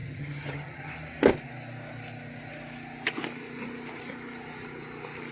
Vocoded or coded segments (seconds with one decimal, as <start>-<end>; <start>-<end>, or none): 0.0-0.9